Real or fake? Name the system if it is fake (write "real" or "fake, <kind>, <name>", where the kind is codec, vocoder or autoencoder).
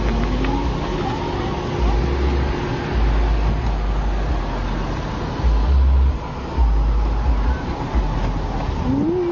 real